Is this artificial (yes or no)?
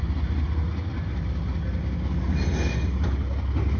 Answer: no